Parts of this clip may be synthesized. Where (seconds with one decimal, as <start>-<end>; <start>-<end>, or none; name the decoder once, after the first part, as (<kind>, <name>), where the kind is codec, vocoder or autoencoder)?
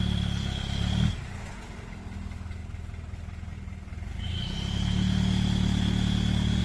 none